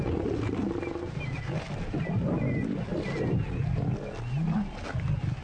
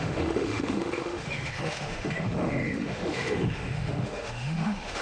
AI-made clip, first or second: second